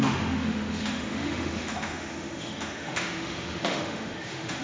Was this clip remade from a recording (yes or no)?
yes